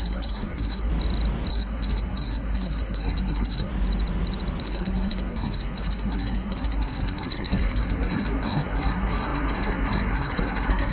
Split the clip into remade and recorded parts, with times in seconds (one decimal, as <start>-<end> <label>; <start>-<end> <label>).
0.0-0.9 remade; 0.9-1.5 recorded; 1.5-3.7 remade; 3.7-4.6 recorded; 4.6-10.9 remade

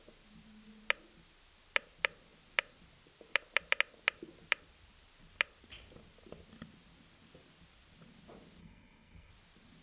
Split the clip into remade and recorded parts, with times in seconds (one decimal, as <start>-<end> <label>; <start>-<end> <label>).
0.0-8.6 recorded; 8.6-9.3 remade; 9.3-9.8 recorded

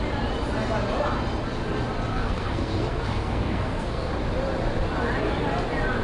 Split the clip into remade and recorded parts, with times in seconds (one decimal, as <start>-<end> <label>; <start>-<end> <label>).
0.0-2.1 recorded; 2.1-4.1 remade; 4.1-6.0 recorded